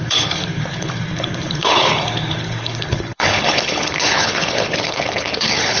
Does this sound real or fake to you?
fake